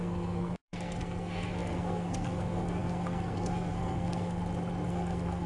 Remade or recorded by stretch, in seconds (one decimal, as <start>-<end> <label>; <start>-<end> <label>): 0.0-4.4 remade; 4.4-4.9 recorded; 4.9-5.5 remade